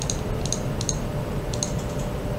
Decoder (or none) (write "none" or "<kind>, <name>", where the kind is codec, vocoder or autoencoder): none